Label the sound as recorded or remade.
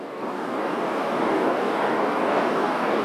remade